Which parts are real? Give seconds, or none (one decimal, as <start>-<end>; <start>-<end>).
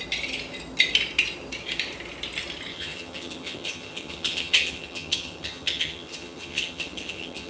0.0-2.7